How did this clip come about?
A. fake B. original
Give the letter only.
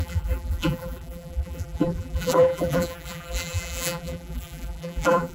A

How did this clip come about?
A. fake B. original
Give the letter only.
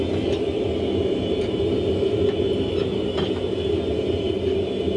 B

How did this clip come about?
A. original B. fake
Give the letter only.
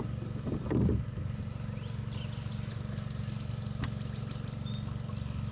A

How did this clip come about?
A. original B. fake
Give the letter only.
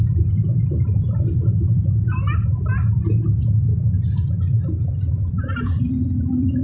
B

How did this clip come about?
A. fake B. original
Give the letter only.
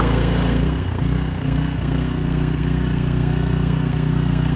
A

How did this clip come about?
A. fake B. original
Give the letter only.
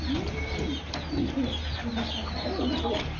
B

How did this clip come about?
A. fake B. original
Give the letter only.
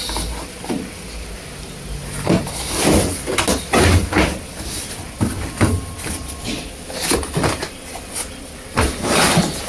B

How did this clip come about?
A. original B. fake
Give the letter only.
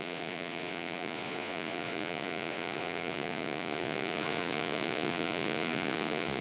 B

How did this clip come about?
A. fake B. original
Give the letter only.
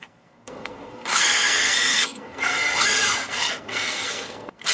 A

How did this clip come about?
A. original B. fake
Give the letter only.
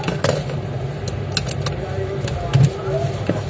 A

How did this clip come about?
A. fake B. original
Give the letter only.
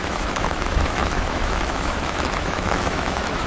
A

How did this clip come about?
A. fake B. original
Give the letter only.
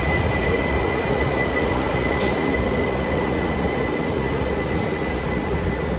A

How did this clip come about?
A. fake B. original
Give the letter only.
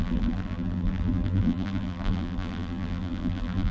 A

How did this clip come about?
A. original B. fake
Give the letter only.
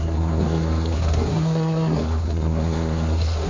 B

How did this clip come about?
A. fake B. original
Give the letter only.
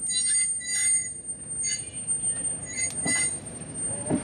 B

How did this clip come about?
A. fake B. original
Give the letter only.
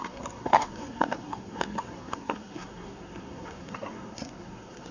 A